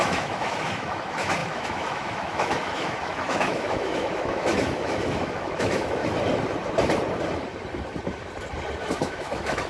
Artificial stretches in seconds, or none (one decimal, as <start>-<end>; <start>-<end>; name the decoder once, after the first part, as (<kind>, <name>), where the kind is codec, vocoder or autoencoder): 0.0-6.0 (autoencoder, DAC-VAE); 8.8-9.7